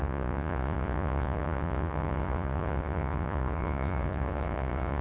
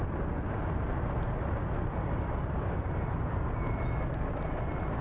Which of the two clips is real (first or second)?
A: second